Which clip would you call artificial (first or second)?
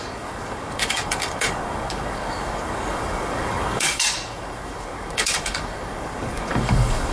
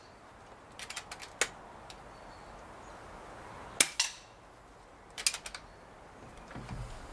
first